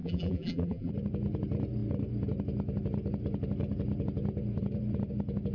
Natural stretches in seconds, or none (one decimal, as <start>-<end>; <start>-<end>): 0.9-5.5